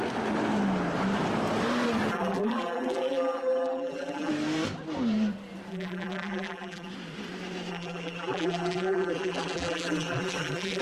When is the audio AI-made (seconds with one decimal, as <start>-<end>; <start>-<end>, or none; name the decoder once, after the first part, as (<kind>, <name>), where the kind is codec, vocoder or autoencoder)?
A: 2.1-4.3 (vocoder, BigVGAN v2); 5.7-6.9; 7.7-10.8